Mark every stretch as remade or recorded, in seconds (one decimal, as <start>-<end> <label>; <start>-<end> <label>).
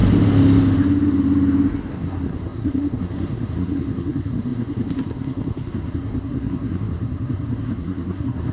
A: 0.0-1.9 recorded; 1.9-8.5 remade